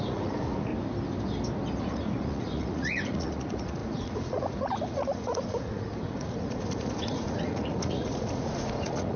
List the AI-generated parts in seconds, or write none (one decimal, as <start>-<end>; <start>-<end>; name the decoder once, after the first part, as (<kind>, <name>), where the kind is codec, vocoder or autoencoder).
0.0-0.7 (vocoder, Vocos); 1.8-9.2